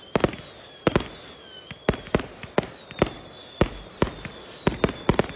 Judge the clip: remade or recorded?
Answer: recorded